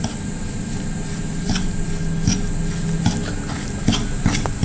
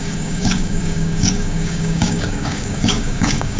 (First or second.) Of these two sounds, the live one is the first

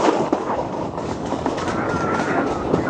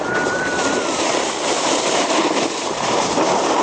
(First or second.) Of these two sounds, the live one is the second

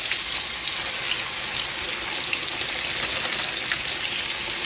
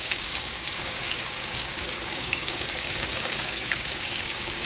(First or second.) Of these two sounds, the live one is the first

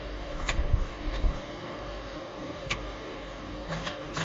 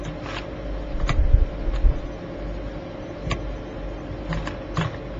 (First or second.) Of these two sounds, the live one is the second